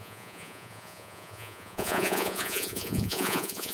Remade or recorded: remade